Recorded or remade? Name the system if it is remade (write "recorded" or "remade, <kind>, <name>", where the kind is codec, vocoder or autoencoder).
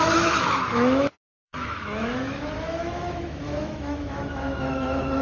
remade, autoencoder, DAC-VAE